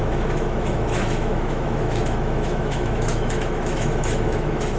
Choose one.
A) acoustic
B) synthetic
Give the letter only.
B